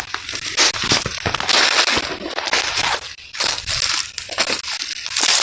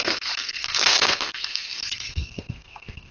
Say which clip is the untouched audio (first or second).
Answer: first